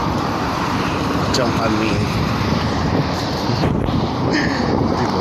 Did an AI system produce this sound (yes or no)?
yes